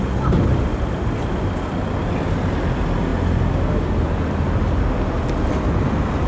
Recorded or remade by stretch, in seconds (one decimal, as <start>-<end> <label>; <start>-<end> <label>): 0.0-6.3 recorded